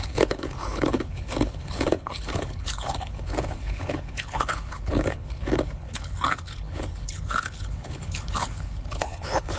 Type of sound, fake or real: fake